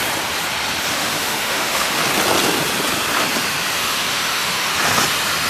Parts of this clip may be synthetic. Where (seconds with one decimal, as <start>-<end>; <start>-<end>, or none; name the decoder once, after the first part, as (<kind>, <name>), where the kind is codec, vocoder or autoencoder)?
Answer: 0.9-2.0 (autoencoder, DAC-VAE); 3.8-4.7